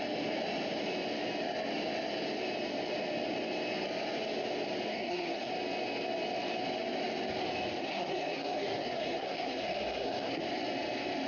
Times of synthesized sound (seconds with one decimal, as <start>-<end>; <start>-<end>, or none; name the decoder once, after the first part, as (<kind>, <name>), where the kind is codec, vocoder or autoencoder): 4.9-5.5 (codec, SNAC); 7.8-10.4